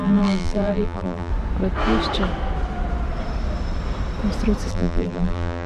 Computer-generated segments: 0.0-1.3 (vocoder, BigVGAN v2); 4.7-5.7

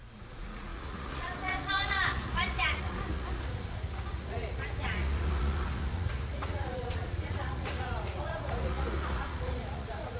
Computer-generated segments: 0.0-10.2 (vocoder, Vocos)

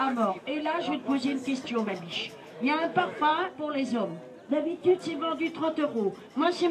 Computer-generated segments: 0.0-3.3 (autoencoder, DAC-VAE); 4.5-5.2; 6.3-6.7

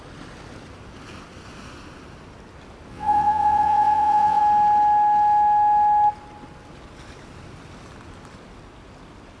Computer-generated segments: 2.9-4.4 (vocoder, WaveNeXt)

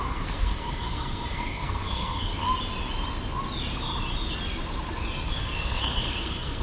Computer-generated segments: 0.0-2.3 (codec, SNAC); 5.3-6.6

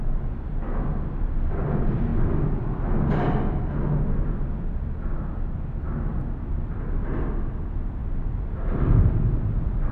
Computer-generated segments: none

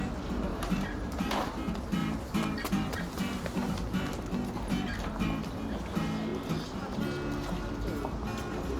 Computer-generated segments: 0.5-1.6 (vocoder, BigVGAN v2); 2.0-3.2